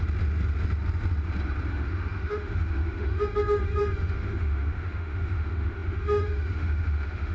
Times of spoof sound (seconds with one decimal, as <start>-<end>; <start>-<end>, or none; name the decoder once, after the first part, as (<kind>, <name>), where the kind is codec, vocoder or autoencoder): 1.7-7.3 (autoencoder, DAC-VAE)